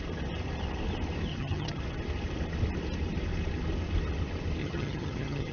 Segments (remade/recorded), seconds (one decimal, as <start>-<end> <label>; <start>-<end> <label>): 0.0-1.3 recorded; 1.3-1.8 remade; 1.8-4.6 recorded; 4.6-5.5 remade